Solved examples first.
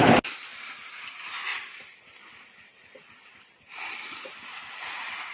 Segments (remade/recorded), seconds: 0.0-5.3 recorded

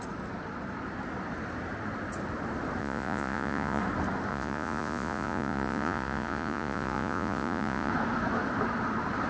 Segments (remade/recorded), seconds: 0.0-2.8 recorded; 2.8-3.8 remade; 3.8-4.3 recorded; 4.3-7.9 remade; 7.9-9.3 recorded

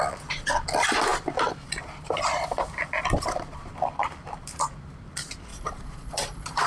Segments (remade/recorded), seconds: 0.0-5.5 recorded; 5.5-6.7 remade

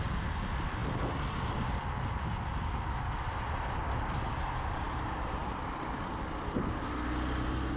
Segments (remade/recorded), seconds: 0.0-7.8 recorded

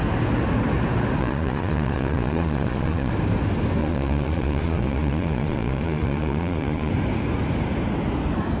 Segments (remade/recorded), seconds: 0.0-1.2 recorded; 1.2-3.1 remade; 3.1-3.8 recorded; 3.8-6.9 remade; 6.9-8.6 recorded

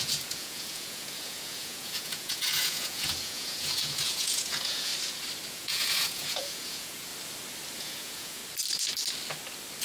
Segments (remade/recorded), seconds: 0.0-4.9 remade; 4.9-5.5 recorded; 5.5-7.1 remade; 7.1-7.8 recorded; 7.8-8.4 remade; 8.4-9.8 recorded